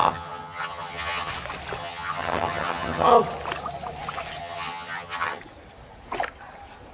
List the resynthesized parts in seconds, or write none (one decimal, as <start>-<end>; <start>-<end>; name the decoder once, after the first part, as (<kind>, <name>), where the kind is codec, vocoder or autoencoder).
0.0-1.3 (vocoder, HiFi-GAN); 1.8-3.2; 4.4-5.4